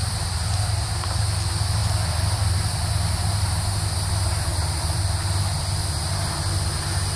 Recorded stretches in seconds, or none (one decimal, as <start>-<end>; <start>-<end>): 1.2-1.8; 2.9-4.5; 5.1-7.2